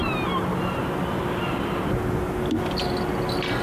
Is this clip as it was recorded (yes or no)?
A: yes